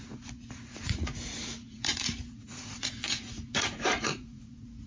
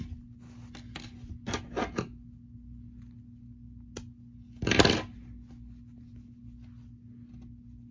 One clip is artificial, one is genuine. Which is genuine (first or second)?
second